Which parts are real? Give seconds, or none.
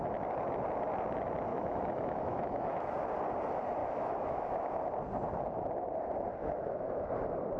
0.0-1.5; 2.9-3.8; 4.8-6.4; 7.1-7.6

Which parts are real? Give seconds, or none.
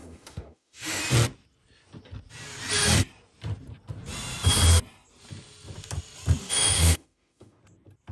1.0-6.4; 7.6-8.1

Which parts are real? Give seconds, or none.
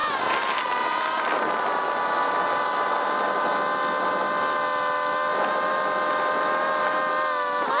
0.0-7.8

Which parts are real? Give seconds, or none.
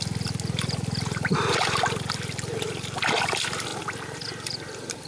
0.0-5.1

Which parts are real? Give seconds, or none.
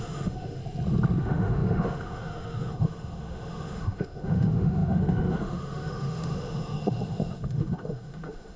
0.6-1.2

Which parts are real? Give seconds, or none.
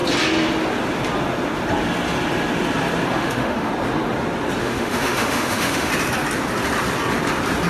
0.0-3.2; 3.7-4.6; 5.9-7.7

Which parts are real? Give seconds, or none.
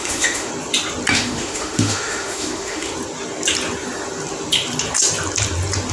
0.5-1.1; 2.9-5.9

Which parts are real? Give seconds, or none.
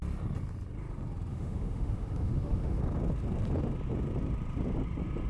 0.0-1.3; 2.8-5.3